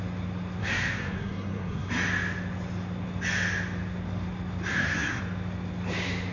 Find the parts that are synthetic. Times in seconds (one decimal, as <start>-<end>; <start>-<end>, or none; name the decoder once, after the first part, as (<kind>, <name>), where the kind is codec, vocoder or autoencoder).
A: 0.6-1.9 (codec, SNAC); 4.7-5.2